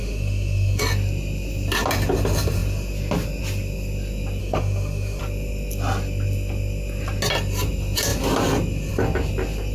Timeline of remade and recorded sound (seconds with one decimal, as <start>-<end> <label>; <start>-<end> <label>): 0.0-0.8 remade; 0.8-4.4 recorded; 4.4-5.2 remade; 5.2-9.7 recorded